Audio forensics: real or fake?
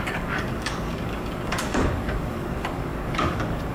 fake